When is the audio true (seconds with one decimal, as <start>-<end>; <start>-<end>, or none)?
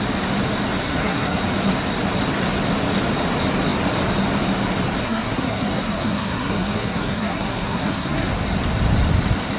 0.0-0.8; 1.4-5.0; 8.3-9.6